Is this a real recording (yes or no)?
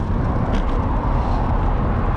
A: yes